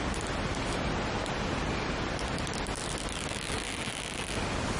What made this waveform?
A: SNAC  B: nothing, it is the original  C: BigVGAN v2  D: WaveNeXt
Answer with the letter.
B